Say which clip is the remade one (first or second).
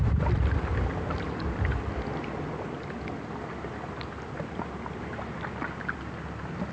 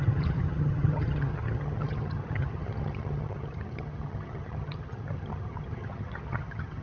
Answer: second